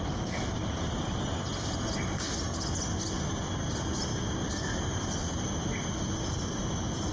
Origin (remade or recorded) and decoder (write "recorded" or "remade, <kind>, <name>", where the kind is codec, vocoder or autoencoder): recorded